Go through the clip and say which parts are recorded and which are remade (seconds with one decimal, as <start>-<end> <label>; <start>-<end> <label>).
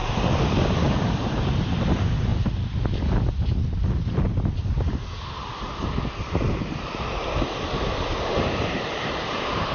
0.0-0.8 recorded; 0.8-2.3 remade; 2.3-6.6 recorded; 6.6-9.7 remade